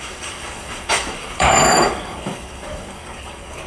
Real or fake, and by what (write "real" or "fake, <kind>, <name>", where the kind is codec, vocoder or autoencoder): fake, codec, DAC